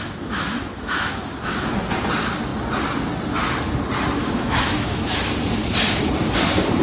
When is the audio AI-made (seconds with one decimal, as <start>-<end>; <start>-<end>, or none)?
0.0-1.7; 4.2-5.3